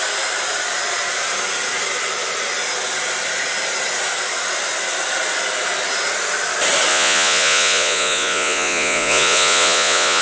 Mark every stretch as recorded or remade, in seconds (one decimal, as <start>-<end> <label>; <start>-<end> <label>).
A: 0.0-6.9 recorded; 6.9-10.2 remade